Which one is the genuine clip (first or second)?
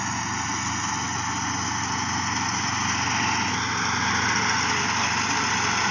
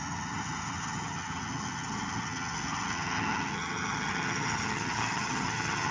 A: first